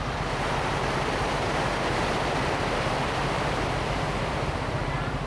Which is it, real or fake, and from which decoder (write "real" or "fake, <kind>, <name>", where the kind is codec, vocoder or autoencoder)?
fake, vocoder, BigVGAN v2